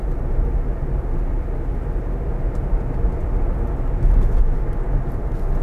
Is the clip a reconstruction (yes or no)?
no